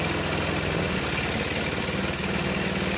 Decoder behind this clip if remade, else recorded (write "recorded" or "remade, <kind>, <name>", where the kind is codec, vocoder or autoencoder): recorded